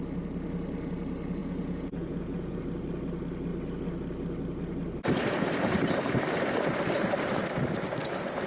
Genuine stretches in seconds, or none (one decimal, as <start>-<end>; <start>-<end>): 0.0-1.4; 2.6-8.5